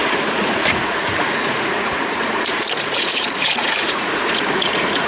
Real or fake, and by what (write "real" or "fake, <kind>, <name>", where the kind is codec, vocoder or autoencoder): fake, vocoder, Vocos